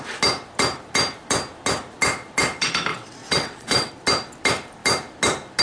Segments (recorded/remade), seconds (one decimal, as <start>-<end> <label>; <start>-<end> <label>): 0.0-2.9 recorded; 2.9-3.9 remade; 3.9-5.6 recorded